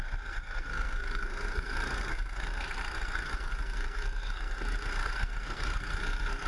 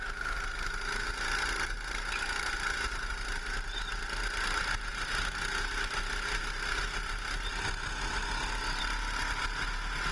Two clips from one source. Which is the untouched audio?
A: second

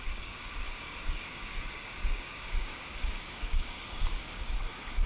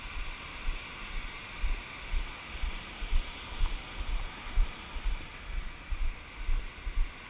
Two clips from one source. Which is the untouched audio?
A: second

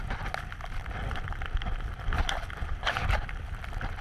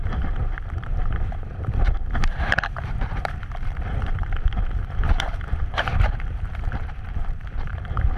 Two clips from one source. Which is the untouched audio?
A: first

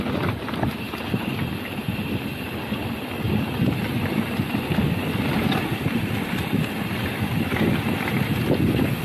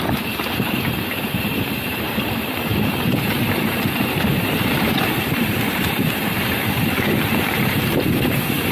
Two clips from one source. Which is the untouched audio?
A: first